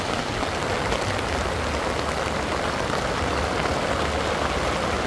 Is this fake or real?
real